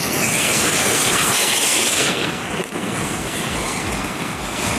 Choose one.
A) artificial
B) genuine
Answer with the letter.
A